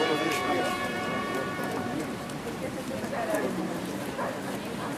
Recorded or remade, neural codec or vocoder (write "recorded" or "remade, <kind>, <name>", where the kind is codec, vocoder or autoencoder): remade, vocoder, BigVGAN v2